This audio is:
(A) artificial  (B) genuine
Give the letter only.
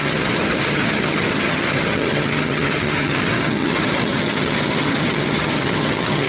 A